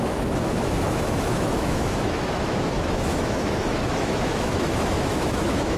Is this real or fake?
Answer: fake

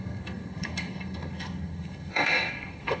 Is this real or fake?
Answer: fake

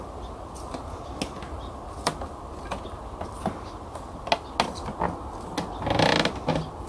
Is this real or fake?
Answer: real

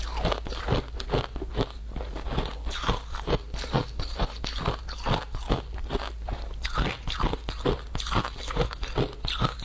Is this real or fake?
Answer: real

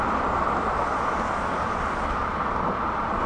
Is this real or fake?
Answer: fake